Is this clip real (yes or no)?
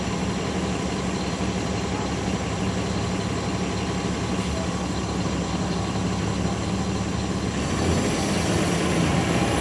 yes